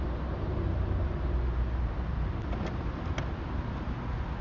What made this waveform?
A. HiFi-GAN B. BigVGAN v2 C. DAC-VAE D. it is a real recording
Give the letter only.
D